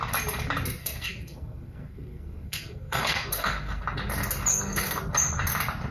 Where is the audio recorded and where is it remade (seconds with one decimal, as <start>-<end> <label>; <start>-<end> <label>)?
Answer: 0.0-0.8 recorded; 0.8-3.8 remade; 3.8-4.5 recorded; 4.5-5.0 remade; 5.0-5.9 recorded